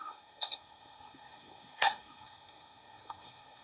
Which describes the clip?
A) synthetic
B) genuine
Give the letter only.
A